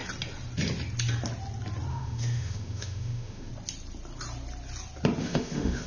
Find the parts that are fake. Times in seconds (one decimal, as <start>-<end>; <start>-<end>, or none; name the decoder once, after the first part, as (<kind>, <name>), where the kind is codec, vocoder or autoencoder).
1.9-3.5 (autoencoder, DAC-VAE); 5.2-5.9